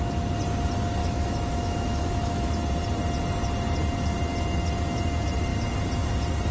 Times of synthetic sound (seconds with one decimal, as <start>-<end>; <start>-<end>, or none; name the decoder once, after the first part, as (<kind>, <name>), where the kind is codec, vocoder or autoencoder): 1.0-2.5 (autoencoder, DAC-VAE)